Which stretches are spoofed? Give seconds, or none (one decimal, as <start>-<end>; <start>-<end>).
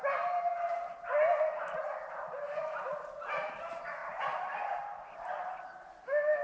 4.0-4.8